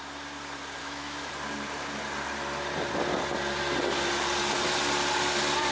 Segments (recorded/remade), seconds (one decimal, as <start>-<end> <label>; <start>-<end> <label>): 0.0-0.8 recorded; 0.8-1.3 remade; 1.3-5.7 recorded